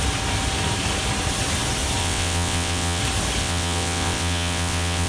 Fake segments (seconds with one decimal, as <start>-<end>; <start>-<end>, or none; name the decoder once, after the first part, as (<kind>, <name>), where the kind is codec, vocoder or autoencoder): 2.0-3.0 (vocoder, WaveNeXt); 3.4-5.1